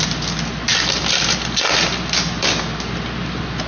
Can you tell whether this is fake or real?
real